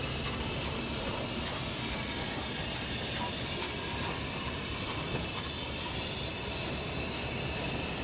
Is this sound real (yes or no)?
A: yes